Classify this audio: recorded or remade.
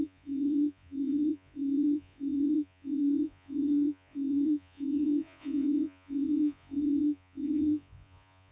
remade